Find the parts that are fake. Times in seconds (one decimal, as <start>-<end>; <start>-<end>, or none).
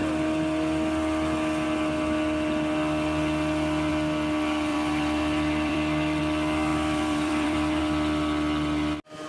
4.7-6.2; 6.7-7.8